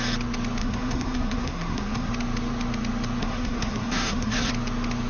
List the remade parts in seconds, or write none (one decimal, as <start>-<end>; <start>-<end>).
0.6-2.1; 3.2-4.5